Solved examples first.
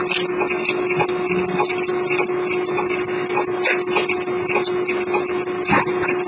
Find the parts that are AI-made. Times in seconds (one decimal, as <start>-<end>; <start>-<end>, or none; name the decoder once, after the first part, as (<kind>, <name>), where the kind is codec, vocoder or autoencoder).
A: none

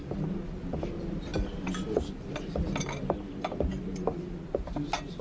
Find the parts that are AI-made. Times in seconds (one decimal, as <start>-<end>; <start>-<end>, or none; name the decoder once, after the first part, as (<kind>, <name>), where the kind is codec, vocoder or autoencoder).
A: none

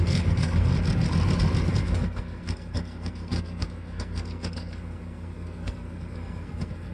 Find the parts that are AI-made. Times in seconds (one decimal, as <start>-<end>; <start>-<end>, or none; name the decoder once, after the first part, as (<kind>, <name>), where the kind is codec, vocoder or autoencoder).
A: 0.0-0.7 (codec, SNAC); 1.7-6.9